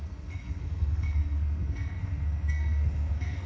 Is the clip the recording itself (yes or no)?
no